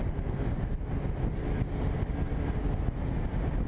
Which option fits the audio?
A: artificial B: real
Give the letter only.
B